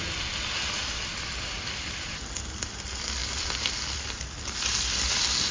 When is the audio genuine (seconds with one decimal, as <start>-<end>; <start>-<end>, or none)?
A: 0.0-1.1; 2.2-3.2; 4.2-5.5